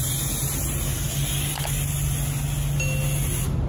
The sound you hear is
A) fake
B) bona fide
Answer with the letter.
B